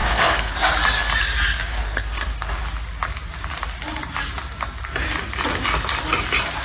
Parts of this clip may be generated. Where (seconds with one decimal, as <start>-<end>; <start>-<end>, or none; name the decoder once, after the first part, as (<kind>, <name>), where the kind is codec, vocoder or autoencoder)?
0.0-0.5 (codec, SNAC); 1.7-2.5